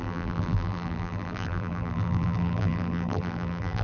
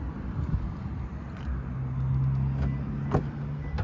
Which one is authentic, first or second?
second